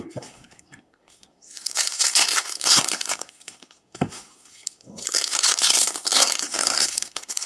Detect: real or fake fake